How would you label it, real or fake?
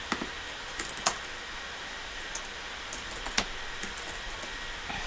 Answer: real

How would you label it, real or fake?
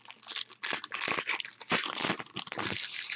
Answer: real